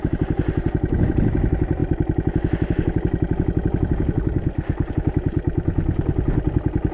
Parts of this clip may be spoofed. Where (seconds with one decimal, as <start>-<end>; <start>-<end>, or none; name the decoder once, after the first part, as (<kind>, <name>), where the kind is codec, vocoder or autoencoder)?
none